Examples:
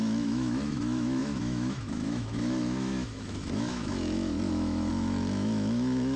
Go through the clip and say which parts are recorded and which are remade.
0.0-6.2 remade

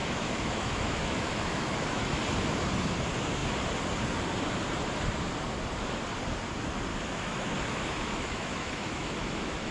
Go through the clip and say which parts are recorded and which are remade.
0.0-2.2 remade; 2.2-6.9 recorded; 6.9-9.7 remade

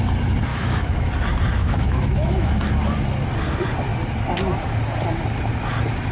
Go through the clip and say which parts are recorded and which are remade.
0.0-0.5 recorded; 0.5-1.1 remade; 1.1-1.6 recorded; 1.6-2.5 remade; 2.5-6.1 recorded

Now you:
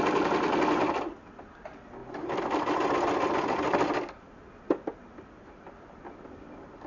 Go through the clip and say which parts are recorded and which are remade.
0.0-6.9 recorded

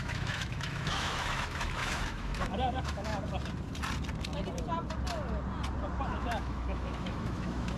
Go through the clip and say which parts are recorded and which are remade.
0.0-3.1 remade; 3.1-6.1 recorded; 6.1-7.8 remade

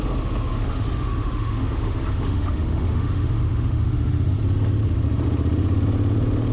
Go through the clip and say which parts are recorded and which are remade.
0.0-0.5 recorded; 0.5-4.4 remade; 4.4-6.5 recorded

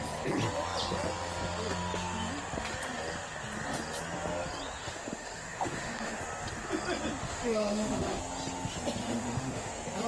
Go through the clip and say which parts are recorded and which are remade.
0.0-4.8 recorded; 4.8-6.2 remade; 6.2-7.2 recorded; 7.2-8.2 remade; 8.2-9.0 recorded; 9.0-9.7 remade; 9.7-10.1 recorded

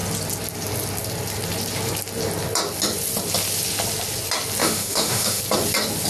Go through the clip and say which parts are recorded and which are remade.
0.0-4.6 recorded; 4.6-5.4 remade; 5.4-6.1 recorded